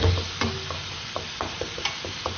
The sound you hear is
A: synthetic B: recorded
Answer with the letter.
B